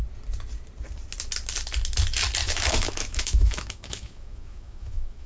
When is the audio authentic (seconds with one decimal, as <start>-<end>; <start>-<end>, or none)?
0.0-2.4